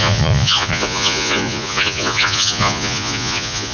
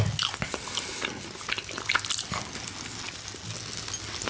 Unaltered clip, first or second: second